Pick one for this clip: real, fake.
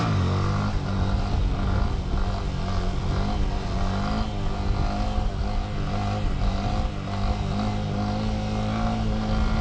real